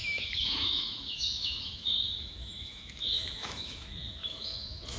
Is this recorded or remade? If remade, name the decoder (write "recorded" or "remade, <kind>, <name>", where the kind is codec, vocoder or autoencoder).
remade, autoencoder, DAC-VAE